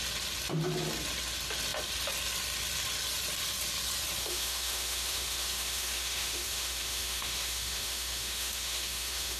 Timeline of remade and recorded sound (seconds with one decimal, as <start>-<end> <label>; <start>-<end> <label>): 0.0-4.2 recorded; 4.2-9.4 remade